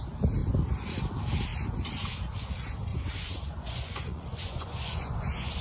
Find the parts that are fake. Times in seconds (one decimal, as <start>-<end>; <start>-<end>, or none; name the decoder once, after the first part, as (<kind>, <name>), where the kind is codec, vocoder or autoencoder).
2.9-5.6 (vocoder, Vocos)